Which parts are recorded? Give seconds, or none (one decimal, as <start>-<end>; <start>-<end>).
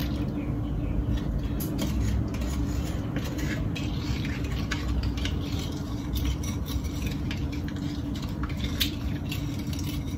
0.0-2.5